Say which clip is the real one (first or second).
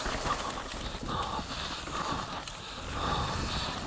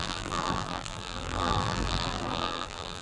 first